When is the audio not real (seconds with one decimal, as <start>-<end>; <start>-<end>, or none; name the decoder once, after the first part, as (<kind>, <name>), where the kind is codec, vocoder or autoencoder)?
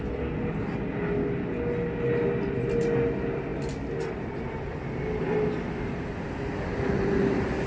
none